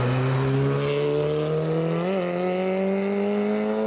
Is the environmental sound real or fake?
real